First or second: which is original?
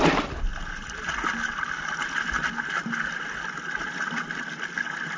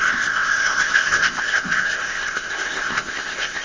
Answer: first